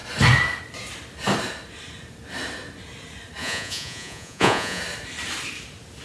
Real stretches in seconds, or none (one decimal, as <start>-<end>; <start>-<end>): 0.0-3.4; 4.8-6.0